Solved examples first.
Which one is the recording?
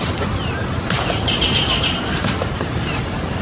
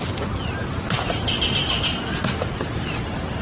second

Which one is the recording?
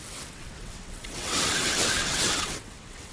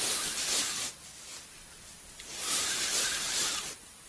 second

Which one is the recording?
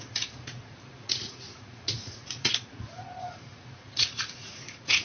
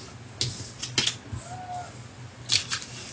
second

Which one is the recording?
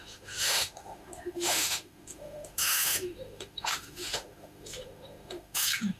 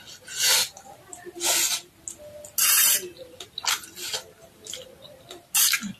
second